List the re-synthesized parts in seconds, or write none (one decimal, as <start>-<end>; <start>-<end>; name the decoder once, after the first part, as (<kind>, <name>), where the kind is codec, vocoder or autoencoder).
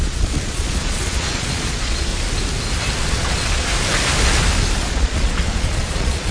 0.0-2.1 (vocoder, Vocos); 3.0-3.7; 4.9-6.3